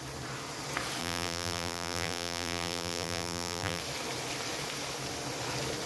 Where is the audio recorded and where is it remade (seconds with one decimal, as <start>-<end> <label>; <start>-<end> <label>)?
0.0-1.0 recorded; 1.0-3.8 remade; 3.8-5.9 recorded